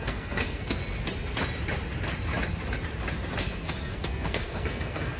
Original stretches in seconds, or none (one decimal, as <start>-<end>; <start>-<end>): 0.8-3.4